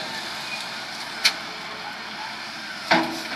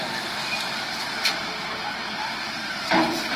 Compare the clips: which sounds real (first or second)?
first